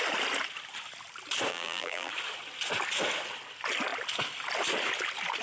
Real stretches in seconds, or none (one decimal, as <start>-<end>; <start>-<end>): 0.0-1.5; 2.1-5.4